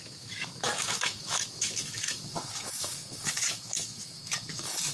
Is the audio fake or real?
fake